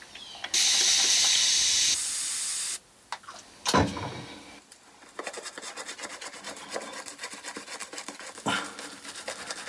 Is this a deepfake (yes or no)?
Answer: no